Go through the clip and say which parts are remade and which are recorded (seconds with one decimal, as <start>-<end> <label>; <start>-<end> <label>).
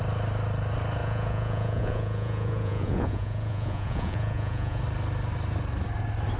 0.0-1.0 recorded; 1.0-4.8 remade; 4.8-6.4 recorded